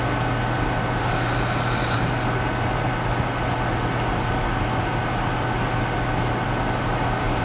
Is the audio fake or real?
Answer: real